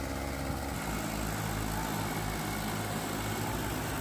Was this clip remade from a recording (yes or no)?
no